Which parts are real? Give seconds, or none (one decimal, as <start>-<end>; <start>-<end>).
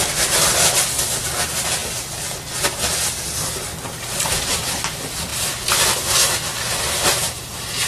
0.0-7.9